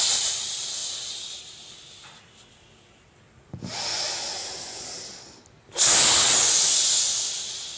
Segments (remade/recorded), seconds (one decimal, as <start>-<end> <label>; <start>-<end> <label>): 0.0-3.9 recorded; 3.9-4.9 remade; 4.9-6.4 recorded; 6.4-7.0 remade; 7.0-7.8 recorded